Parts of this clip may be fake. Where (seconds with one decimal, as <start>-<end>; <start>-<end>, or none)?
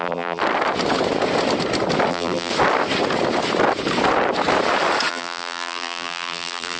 0.0-0.4; 2.1-2.5; 5.1-6.8